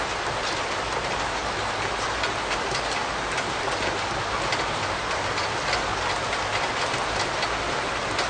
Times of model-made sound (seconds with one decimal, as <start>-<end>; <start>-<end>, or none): none